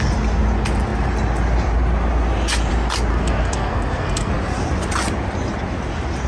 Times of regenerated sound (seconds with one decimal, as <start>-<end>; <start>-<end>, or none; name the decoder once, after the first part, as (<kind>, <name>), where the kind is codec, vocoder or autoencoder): 3.1-4.3 (codec, SNAC)